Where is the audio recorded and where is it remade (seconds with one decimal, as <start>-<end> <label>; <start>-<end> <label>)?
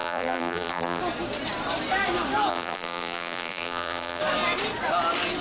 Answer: 0.0-1.0 remade; 1.0-2.5 recorded; 2.5-4.2 remade; 4.2-5.4 recorded